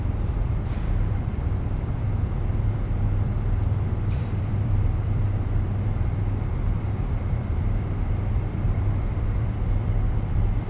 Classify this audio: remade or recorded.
remade